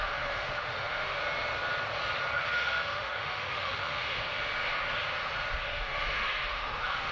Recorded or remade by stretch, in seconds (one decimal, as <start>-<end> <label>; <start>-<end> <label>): 0.0-1.2 remade; 1.2-2.3 recorded; 2.3-4.2 remade; 4.2-5.7 recorded; 5.7-7.1 remade